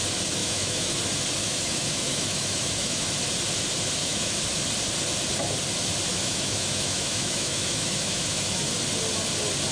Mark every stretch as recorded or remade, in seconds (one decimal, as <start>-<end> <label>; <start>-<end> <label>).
0.0-0.4 recorded; 0.4-1.0 remade; 1.0-1.4 recorded; 1.4-3.1 remade; 3.1-4.0 recorded; 4.0-4.6 remade; 4.6-6.1 recorded; 6.1-8.6 remade; 8.6-9.7 recorded